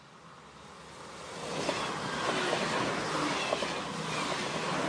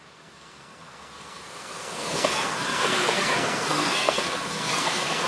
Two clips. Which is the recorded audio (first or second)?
first